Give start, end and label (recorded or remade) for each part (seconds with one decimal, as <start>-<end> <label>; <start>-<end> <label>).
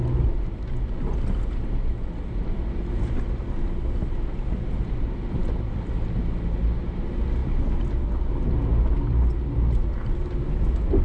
0.0-11.0 recorded